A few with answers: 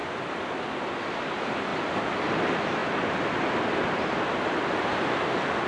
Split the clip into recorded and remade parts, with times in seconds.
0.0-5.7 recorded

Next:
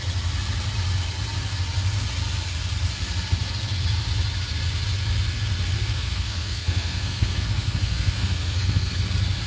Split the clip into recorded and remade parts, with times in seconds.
0.0-5.8 recorded; 5.8-9.0 remade; 9.0-9.5 recorded

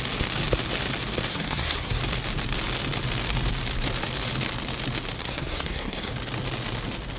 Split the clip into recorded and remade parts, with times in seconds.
0.0-1.3 recorded; 1.3-2.0 remade; 2.0-5.2 recorded; 5.2-6.1 remade; 6.1-7.2 recorded

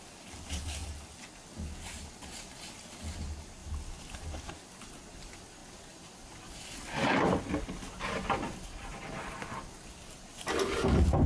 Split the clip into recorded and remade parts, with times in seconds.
0.0-11.3 recorded

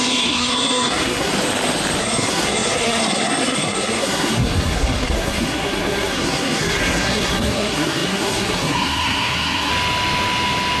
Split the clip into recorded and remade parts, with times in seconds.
0.0-1.3 remade; 1.3-2.0 recorded; 2.0-9.7 remade; 9.7-10.8 recorded

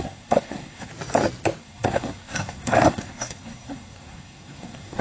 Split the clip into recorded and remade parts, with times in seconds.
0.0-0.9 remade; 0.9-1.6 recorded; 1.6-5.0 remade